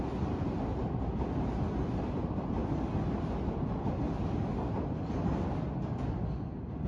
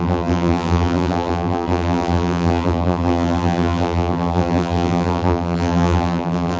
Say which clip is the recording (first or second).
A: first